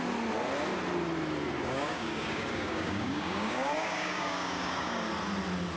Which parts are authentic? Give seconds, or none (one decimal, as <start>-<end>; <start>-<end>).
0.0-1.6; 5.1-5.8